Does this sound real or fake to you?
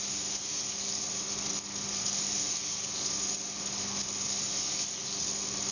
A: real